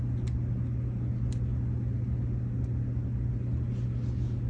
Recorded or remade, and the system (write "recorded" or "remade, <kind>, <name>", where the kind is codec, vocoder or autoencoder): recorded